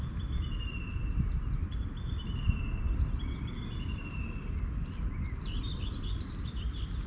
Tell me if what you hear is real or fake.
real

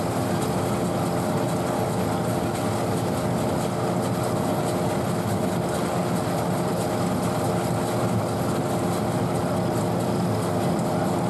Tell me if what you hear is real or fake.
real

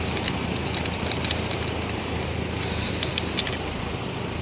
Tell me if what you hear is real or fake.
real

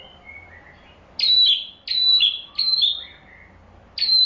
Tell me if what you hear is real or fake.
real